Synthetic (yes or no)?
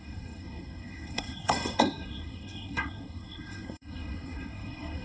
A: yes